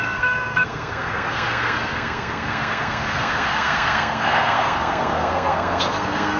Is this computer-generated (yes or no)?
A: yes